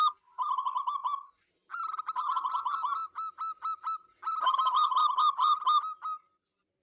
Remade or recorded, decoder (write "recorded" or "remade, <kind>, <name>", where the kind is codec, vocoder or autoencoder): recorded